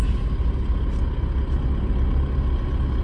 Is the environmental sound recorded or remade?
recorded